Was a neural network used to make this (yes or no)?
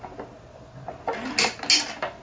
no